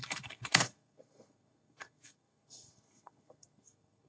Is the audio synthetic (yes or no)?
yes